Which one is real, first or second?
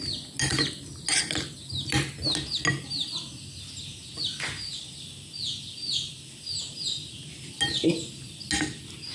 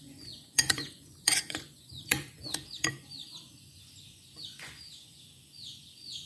first